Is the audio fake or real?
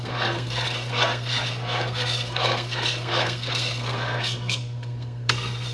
fake